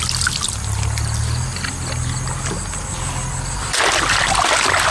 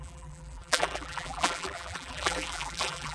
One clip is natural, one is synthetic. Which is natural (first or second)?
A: first